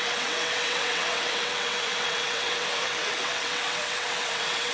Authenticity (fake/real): fake